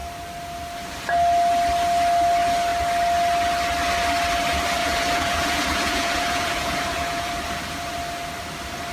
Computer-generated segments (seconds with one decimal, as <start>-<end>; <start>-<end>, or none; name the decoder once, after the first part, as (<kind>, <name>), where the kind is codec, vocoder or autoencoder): 4.8-7.3 (vocoder, Vocos)